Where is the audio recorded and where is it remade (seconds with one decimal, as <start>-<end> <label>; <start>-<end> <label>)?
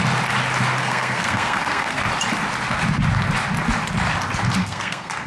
0.0-0.8 recorded; 0.8-2.0 remade; 2.0-4.6 recorded; 4.6-5.3 remade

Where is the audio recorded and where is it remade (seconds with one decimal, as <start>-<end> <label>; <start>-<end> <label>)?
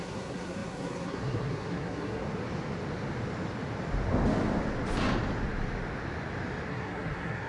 0.0-2.2 remade; 2.2-6.7 recorded; 6.7-7.5 remade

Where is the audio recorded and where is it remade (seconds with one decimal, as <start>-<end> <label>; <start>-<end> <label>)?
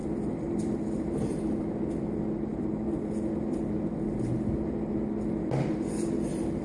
0.0-6.6 recorded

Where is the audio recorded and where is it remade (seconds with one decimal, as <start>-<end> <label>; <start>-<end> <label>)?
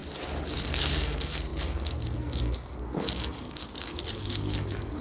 0.0-0.6 recorded; 0.6-5.0 remade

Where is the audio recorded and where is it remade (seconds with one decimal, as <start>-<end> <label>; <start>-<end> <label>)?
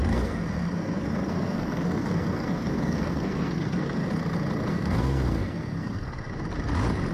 0.0-4.1 remade; 4.1-4.7 recorded; 4.7-6.3 remade; 6.3-7.1 recorded